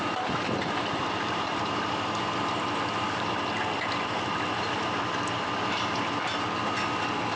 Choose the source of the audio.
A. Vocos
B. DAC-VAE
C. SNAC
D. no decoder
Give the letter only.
D